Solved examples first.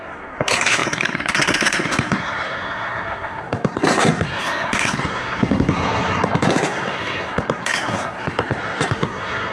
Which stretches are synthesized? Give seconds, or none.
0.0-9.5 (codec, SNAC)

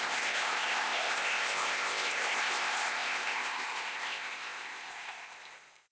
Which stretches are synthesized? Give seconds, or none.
0.0-5.9 (codec, ZipCodec)

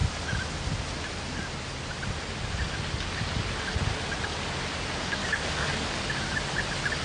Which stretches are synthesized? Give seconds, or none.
5.2-6.0 (codec, DAC)

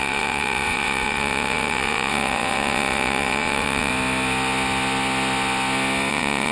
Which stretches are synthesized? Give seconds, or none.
0.0-3.9 (vocoder, WaveNeXt); 6.1-6.5

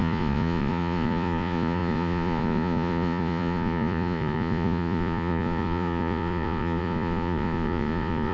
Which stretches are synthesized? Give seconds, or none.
0.0-8.3 (vocoder, Vocos)

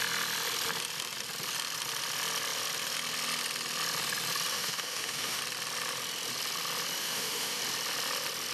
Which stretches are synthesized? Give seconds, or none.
4.5-5.4 (autoencoder, DAC-VAE); 7.0-7.6

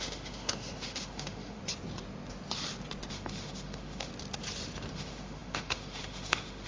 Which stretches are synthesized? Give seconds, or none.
0.0-1.6 (autoencoder, DAC-VAE); 3.1-4.1; 4.9-6.7